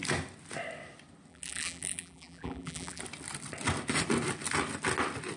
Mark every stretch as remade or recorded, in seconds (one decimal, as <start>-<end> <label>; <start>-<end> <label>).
0.0-1.3 recorded; 1.3-3.0 remade; 3.0-5.4 recorded